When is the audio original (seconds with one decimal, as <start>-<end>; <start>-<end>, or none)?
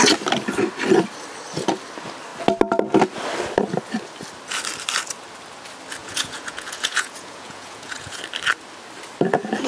0.0-6.0; 8.2-9.7